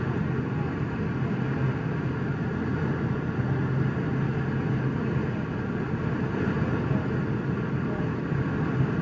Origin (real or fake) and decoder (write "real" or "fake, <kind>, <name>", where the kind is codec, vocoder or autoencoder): real